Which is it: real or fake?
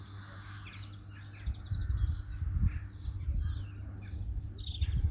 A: real